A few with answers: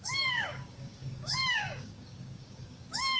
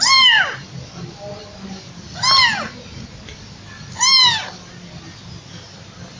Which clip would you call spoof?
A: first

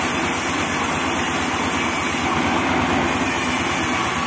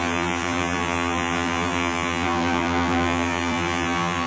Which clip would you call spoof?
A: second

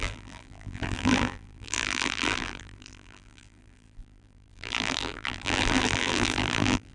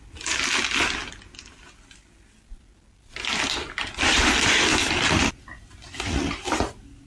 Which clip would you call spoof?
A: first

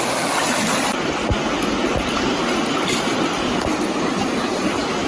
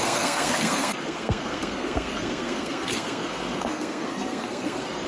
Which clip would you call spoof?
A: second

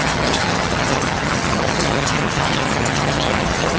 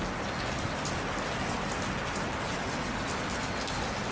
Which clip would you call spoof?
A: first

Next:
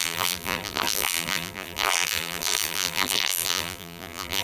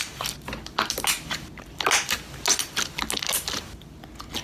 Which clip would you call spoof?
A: first